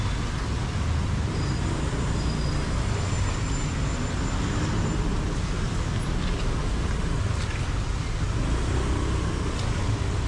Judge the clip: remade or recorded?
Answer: recorded